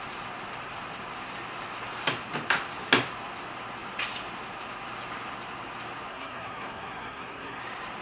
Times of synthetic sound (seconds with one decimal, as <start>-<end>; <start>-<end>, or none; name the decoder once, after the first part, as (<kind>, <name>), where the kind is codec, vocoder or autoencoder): 6.1-7.6 (codec, SNAC)